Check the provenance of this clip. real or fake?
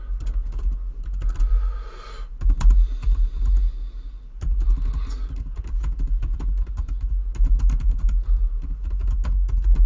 real